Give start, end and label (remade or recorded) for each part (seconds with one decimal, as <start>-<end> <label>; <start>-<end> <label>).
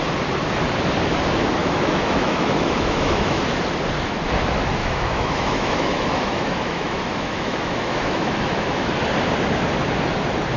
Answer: 0.0-1.6 recorded; 1.6-3.4 remade; 3.4-4.8 recorded; 4.8-8.9 remade; 8.9-10.6 recorded